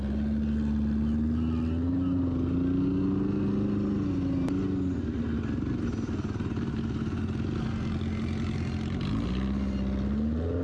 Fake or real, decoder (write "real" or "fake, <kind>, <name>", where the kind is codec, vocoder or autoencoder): real